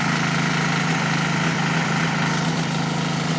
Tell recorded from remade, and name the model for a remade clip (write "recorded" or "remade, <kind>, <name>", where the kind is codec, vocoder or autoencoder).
recorded